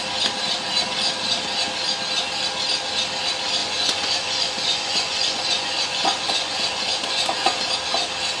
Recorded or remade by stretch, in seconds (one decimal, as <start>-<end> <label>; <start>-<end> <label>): 0.0-3.6 recorded; 3.6-7.6 remade; 7.6-8.4 recorded

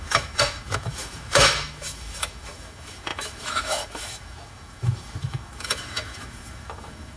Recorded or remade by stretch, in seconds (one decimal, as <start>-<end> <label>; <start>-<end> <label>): 0.0-7.2 remade

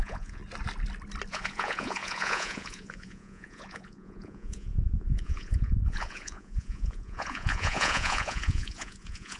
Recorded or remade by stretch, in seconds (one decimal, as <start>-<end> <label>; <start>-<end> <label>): 0.0-0.4 remade; 0.4-1.3 recorded; 1.3-9.4 remade

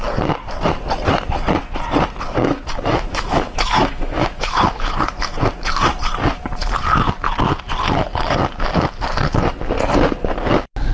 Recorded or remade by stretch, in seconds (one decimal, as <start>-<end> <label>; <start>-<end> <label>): 0.0-2.4 recorded; 2.4-4.9 remade; 4.9-10.9 recorded

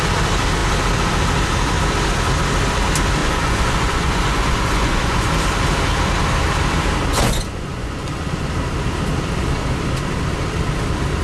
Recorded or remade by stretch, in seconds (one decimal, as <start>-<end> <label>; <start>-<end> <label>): 0.0-3.2 recorded; 3.2-5.3 remade; 5.3-7.1 recorded; 7.1-8.5 remade; 8.5-11.2 recorded

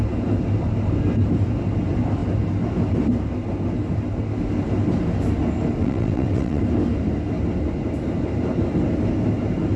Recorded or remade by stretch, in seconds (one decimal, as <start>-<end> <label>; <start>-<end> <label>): 0.0-5.8 recorded; 5.8-6.6 remade; 6.6-9.8 recorded